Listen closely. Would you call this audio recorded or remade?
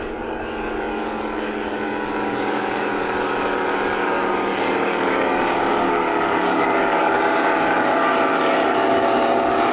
remade